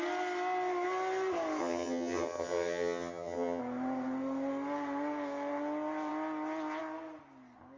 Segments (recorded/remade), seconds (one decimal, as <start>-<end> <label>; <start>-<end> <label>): 0.0-1.6 recorded; 1.6-3.6 remade; 3.6-7.8 recorded